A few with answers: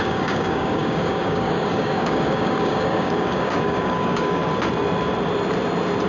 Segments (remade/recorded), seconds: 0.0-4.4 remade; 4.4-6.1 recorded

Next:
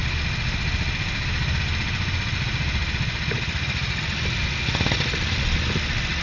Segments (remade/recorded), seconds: 0.0-6.2 recorded

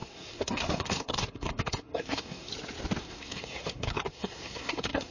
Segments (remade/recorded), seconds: 0.0-2.5 remade; 2.5-3.0 recorded; 3.0-5.1 remade

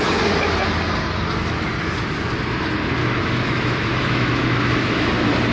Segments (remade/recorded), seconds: 0.0-3.0 recorded; 3.0-5.1 remade; 5.1-5.5 recorded

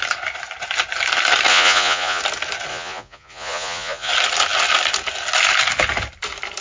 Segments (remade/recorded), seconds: 0.0-1.5 recorded; 1.5-2.2 remade; 2.2-2.7 recorded; 2.7-4.1 remade; 4.1-6.6 recorded

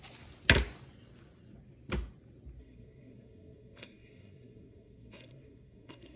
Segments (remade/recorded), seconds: 0.0-2.6 recorded; 2.6-6.2 remade